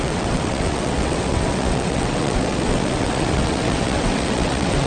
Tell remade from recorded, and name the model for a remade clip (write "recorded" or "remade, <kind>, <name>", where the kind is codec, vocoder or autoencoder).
remade, vocoder, WaveNeXt